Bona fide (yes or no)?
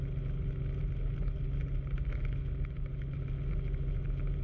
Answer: yes